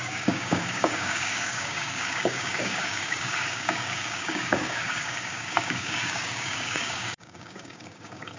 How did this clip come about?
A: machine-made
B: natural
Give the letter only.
A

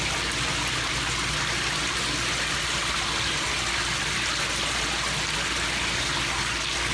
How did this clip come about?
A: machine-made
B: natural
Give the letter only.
B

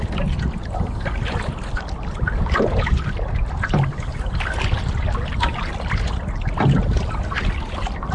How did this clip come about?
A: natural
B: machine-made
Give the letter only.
A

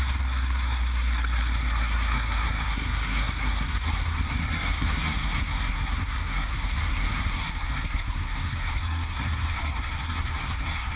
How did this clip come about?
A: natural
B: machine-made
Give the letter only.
B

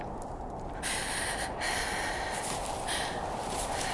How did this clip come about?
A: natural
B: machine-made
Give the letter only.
A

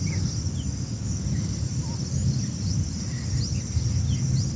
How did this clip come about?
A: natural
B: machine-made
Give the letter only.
A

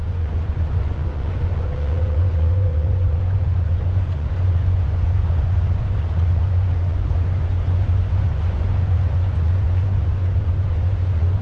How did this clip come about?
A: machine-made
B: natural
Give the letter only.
A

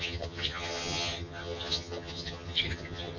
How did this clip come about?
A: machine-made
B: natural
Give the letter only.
A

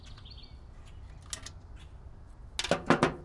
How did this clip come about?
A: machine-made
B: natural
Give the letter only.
B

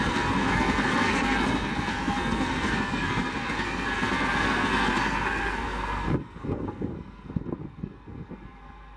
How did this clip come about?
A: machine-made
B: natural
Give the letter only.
A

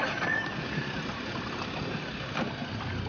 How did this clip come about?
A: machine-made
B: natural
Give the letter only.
B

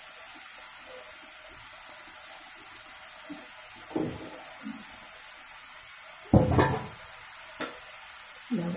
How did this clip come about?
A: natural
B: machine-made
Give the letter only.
A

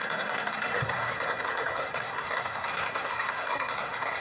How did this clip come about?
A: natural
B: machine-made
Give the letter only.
B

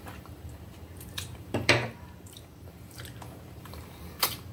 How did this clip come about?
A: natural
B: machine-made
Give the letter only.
B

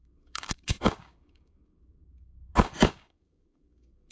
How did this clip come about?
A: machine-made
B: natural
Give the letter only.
A